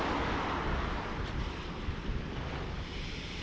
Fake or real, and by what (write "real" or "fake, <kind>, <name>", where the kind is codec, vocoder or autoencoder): real